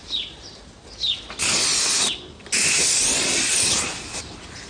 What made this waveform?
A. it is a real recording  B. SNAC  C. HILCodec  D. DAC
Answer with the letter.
A